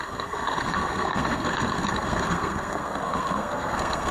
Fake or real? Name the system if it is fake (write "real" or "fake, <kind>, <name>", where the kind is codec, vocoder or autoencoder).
fake, codec, SNAC